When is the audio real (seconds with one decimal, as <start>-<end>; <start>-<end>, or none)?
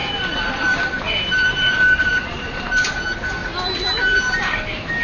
3.0-5.0